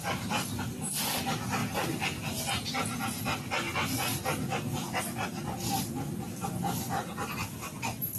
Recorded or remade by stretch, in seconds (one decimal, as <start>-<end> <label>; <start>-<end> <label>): 0.0-1.6 recorded; 1.6-2.2 remade; 2.2-8.2 recorded